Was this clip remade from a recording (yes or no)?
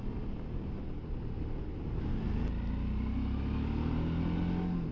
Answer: no